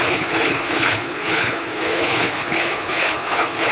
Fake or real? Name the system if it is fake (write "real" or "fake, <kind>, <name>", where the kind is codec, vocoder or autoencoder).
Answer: fake, codec, HILCodec